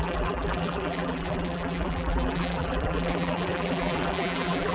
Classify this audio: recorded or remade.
remade